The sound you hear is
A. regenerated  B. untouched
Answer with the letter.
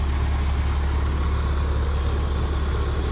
B